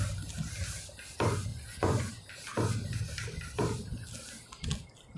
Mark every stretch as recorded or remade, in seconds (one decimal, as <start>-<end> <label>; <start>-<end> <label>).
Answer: 0.0-1.5 recorded; 1.5-2.1 remade; 2.1-5.2 recorded